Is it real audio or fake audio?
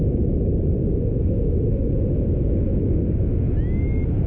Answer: real